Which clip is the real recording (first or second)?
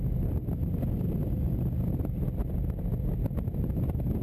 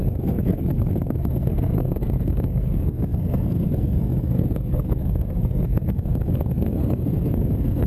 first